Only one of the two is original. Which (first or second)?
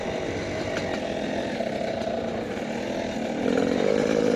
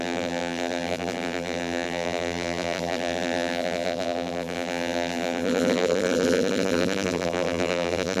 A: first